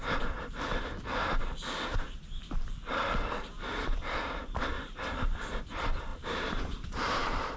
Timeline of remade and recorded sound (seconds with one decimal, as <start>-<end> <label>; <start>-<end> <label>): 0.0-6.1 recorded; 6.1-7.6 remade